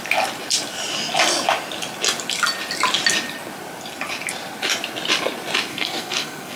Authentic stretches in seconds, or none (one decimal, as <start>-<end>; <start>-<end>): 0.0-5.7